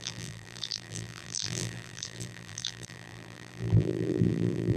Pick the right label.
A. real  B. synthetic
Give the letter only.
B